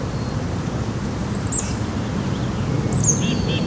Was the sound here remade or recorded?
recorded